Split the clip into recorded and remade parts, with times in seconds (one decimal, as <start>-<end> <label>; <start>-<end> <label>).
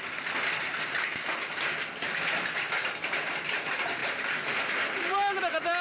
0.0-5.8 recorded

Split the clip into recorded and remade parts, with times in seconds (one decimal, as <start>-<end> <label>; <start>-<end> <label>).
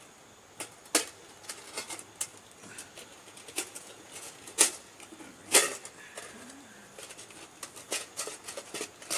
0.0-3.1 recorded; 3.1-4.7 remade; 4.7-7.9 recorded; 7.9-8.7 remade; 8.7-9.2 recorded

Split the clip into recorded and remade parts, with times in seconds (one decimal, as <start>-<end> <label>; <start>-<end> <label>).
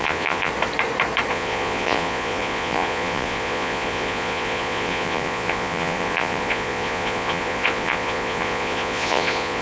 0.0-0.5 remade; 0.5-1.3 recorded; 1.3-9.6 remade